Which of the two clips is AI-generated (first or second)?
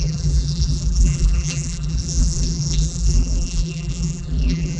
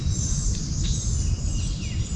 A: first